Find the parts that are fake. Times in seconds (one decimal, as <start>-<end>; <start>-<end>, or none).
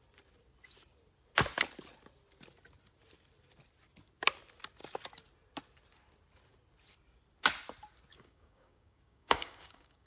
8.1-10.1